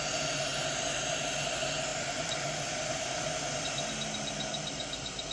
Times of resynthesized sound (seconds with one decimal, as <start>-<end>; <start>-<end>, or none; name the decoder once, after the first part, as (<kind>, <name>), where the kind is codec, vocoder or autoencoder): 1.9-3.9 (vocoder, BigVGAN v2); 4.5-5.3